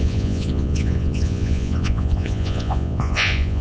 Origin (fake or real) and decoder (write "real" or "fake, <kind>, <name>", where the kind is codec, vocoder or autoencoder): fake, vocoder, Vocos